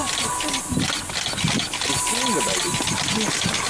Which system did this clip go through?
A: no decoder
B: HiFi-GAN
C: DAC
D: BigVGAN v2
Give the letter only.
A